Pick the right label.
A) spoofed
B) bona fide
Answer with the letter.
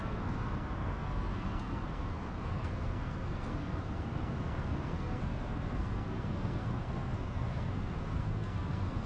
A